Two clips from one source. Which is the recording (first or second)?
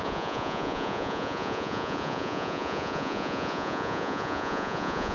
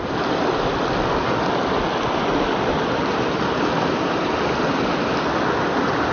second